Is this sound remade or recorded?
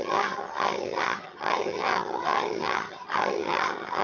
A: remade